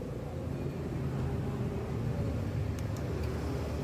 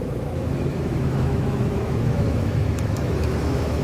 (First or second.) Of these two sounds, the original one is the first